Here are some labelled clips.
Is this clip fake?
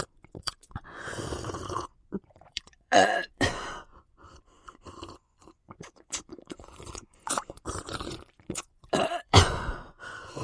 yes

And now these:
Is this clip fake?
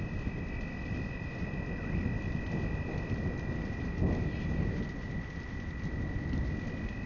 no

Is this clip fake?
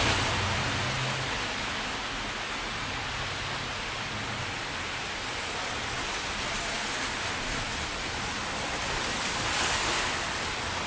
no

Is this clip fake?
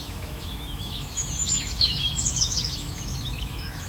yes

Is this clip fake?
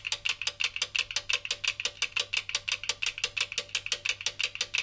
no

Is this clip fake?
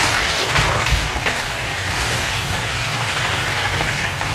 yes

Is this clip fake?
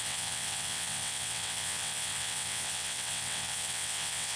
yes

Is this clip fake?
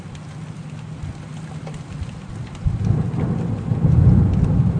no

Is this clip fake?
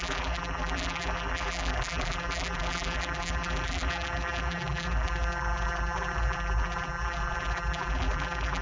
yes